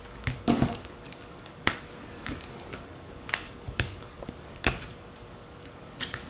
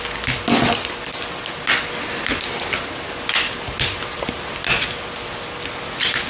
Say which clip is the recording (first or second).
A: second